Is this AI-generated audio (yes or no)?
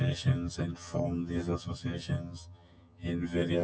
yes